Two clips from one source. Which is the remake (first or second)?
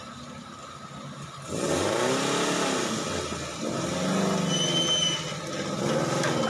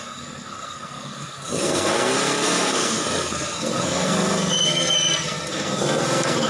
second